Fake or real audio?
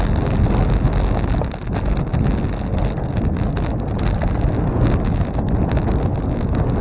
real